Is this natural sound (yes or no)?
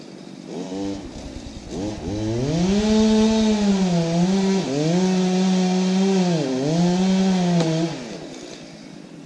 yes